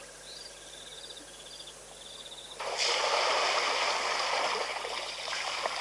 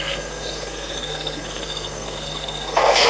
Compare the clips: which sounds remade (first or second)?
second